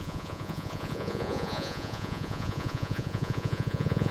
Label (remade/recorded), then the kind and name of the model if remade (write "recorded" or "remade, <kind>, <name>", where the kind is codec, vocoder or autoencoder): remade, vocoder, Vocos